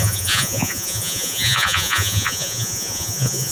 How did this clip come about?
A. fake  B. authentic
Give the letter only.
A